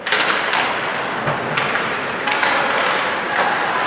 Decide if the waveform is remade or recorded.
recorded